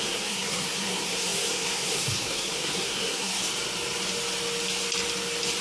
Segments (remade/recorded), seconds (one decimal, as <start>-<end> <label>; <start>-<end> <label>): 0.0-3.4 remade; 3.4-5.6 recorded